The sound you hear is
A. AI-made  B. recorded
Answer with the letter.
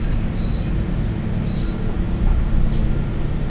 B